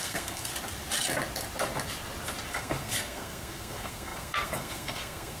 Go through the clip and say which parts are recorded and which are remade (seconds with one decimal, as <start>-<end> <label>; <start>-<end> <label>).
0.0-0.5 remade; 0.5-2.5 recorded; 2.5-5.4 remade